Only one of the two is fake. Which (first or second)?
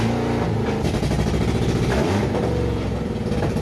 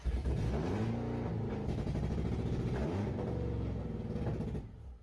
first